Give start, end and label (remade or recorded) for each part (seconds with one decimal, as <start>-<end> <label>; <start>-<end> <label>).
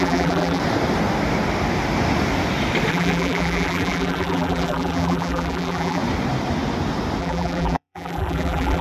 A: 0.0-0.6 remade; 0.6-2.9 recorded; 2.9-6.0 remade; 6.0-7.2 recorded; 7.2-8.8 remade